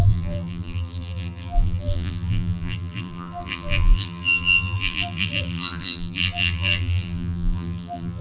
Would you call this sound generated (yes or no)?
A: yes